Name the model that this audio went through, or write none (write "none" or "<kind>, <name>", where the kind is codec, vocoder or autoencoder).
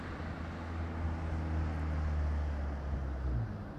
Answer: none